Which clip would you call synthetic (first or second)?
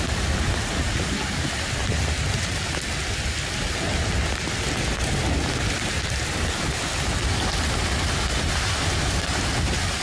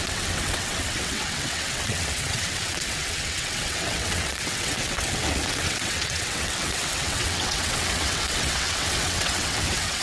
second